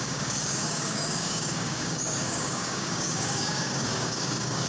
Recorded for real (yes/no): no